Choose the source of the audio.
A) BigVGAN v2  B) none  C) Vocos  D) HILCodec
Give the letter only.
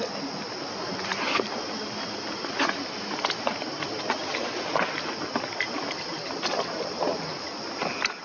B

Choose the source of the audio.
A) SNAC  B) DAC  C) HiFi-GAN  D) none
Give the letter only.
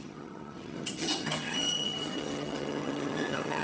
C